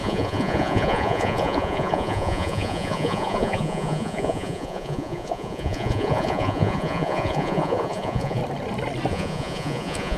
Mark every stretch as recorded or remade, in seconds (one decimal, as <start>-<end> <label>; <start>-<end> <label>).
0.0-8.4 remade; 8.4-9.1 recorded; 9.1-10.2 remade